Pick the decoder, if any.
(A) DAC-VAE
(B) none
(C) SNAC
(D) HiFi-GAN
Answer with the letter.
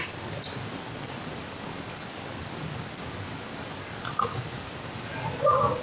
B